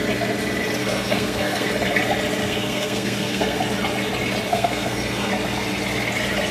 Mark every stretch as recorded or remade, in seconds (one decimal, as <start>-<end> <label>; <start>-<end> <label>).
0.0-0.8 recorded; 0.8-1.7 remade; 1.7-2.4 recorded; 2.4-3.6 remade; 3.6-4.5 recorded; 4.5-5.3 remade; 5.3-6.5 recorded